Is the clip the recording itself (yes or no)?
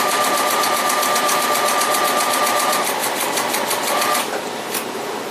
no